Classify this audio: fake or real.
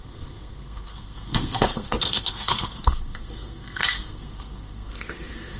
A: fake